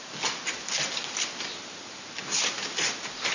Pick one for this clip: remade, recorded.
recorded